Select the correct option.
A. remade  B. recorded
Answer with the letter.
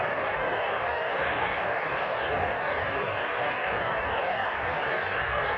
A